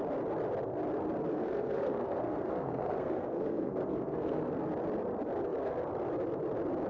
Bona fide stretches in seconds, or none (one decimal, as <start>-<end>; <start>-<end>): 0.0-1.3; 4.5-6.9